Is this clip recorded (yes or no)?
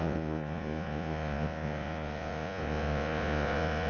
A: no